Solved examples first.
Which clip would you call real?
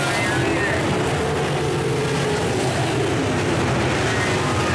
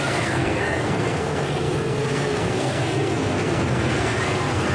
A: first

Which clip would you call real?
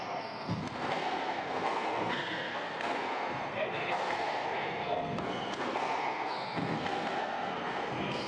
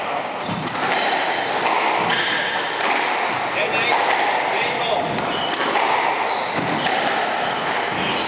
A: second